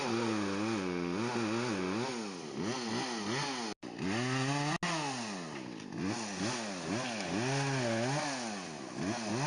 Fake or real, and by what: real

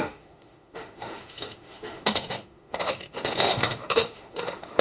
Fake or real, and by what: fake, autoencoder, DAC-VAE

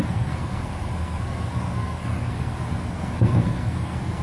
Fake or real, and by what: fake, codec, SNAC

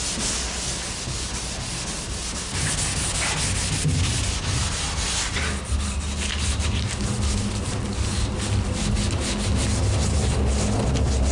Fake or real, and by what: real